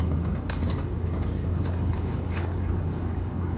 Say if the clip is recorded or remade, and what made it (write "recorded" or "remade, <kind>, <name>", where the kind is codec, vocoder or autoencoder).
remade, codec, DAC